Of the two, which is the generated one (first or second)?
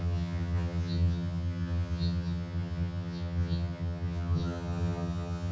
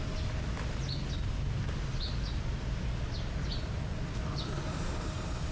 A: first